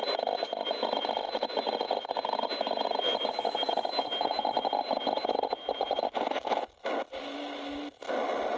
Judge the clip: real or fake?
real